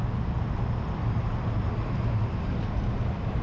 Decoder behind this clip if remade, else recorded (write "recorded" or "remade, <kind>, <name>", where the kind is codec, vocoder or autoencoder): recorded